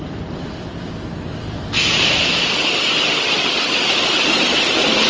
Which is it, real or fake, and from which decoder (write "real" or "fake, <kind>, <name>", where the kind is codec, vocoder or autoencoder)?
real